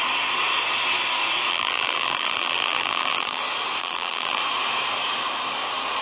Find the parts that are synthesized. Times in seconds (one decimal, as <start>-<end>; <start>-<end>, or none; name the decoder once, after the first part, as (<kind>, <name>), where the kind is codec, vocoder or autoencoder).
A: 1.5-3.4 (vocoder, BigVGAN v2); 3.8-4.4